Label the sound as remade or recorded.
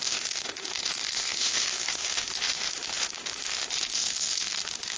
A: remade